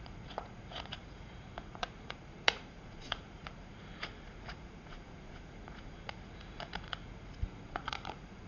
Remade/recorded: remade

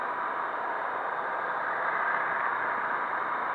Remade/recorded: recorded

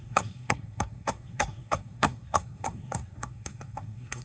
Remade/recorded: remade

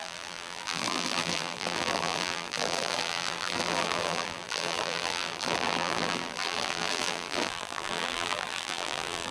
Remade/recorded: remade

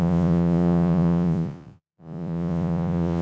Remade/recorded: remade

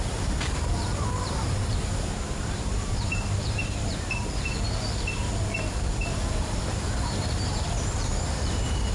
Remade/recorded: remade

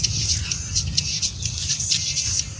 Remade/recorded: recorded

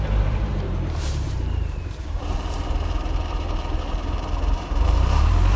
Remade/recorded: remade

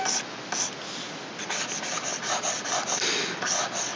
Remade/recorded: recorded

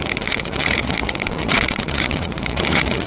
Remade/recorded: remade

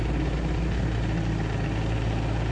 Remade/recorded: recorded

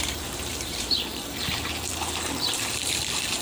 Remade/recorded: remade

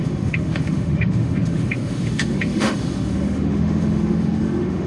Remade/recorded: remade